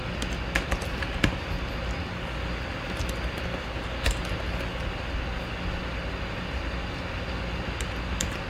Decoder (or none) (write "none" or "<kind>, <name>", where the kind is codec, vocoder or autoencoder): none